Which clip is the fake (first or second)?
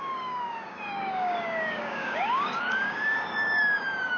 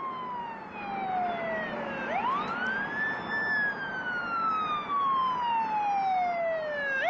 first